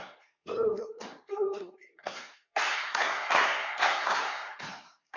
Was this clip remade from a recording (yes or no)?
yes